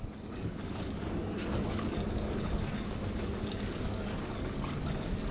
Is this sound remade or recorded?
remade